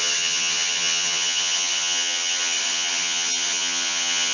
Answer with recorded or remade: remade